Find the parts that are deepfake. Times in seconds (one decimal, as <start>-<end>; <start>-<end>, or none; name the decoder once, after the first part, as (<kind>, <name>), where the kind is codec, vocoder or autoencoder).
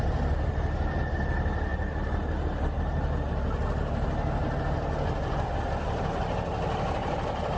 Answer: none